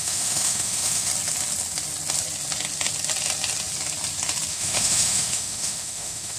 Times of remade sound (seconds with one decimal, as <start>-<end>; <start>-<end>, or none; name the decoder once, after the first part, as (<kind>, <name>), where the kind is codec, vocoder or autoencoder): 0.0-1.1 (autoencoder, DAC-VAE); 4.5-6.4